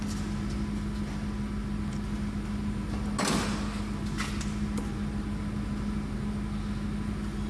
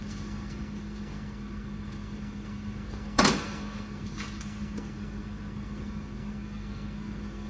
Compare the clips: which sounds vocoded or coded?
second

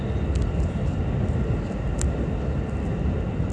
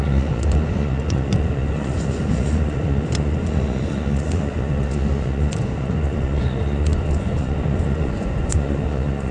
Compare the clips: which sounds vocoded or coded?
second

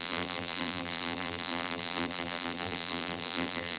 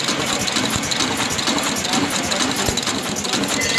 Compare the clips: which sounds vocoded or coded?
first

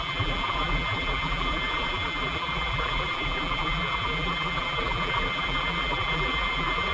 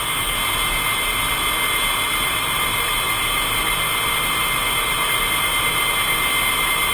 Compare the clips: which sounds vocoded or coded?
first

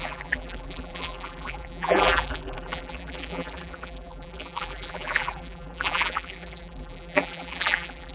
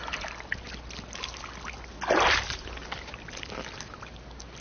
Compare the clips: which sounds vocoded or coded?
first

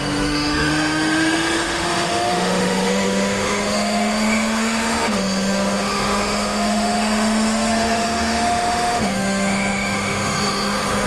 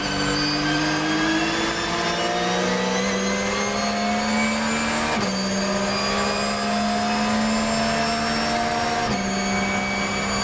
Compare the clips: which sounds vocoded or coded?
first